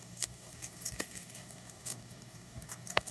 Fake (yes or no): yes